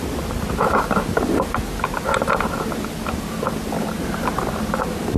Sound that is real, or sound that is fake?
real